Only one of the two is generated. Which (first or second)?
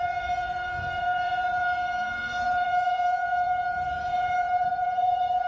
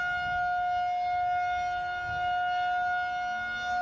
first